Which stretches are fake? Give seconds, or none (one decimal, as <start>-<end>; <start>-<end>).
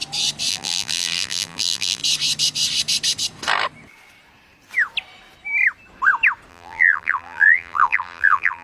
0.5-2.0; 6.5-8.6